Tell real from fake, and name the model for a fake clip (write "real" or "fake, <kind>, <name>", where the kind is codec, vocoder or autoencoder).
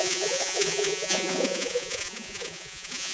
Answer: fake, vocoder, Vocos